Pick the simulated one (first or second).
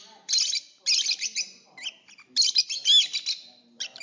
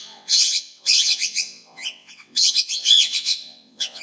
second